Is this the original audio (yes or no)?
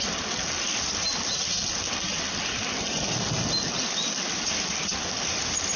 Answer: yes